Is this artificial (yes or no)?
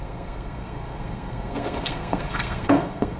yes